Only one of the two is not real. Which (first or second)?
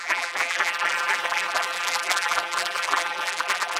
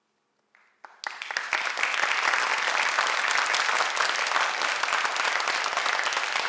first